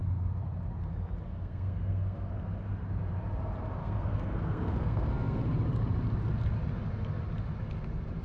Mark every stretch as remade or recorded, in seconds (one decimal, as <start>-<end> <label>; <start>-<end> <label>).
0.0-1.3 recorded; 1.3-2.3 remade; 2.3-3.8 recorded; 3.8-5.4 remade; 5.4-8.2 recorded